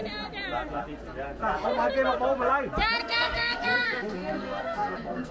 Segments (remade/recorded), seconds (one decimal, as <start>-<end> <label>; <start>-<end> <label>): 0.0-3.0 recorded; 3.0-5.3 remade